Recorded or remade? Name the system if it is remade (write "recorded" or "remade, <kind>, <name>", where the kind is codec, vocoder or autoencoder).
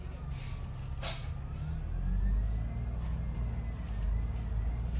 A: recorded